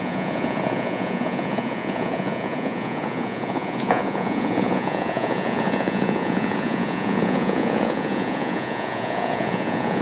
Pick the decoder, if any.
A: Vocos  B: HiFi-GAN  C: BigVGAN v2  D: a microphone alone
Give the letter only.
A